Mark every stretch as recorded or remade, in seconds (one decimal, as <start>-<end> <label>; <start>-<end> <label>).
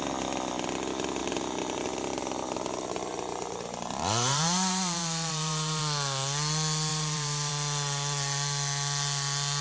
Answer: 0.0-1.2 recorded; 1.2-5.8 remade; 5.8-6.9 recorded; 6.9-7.5 remade; 7.5-9.6 recorded